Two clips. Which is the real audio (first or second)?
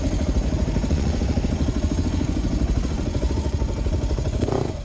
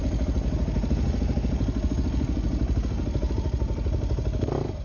second